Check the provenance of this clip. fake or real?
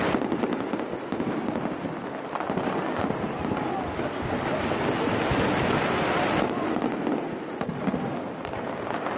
real